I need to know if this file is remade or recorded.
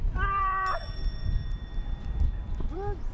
remade